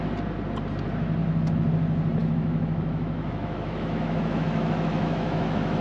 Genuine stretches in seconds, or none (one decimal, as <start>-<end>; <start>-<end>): 0.0-2.2

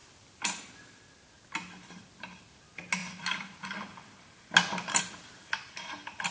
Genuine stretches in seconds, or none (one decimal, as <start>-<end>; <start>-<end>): 0.0-6.3

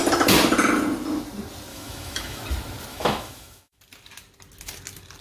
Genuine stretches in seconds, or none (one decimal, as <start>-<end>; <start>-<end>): 0.0-1.7; 2.4-2.9; 3.8-5.2

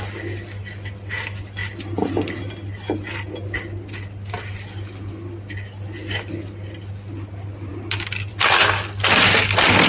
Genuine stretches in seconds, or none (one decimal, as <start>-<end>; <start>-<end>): 0.0-9.9

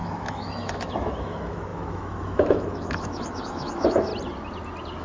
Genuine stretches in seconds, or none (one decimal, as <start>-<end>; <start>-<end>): 4.1-5.0

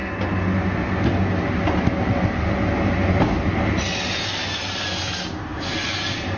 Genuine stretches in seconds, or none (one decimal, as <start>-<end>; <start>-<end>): 0.0-6.4

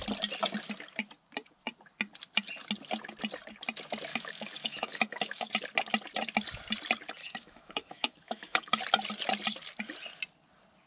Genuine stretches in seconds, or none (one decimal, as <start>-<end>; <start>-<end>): 0.0-4.1; 5.5-7.2; 8.8-10.9